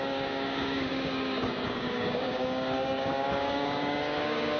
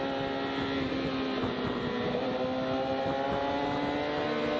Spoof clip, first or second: first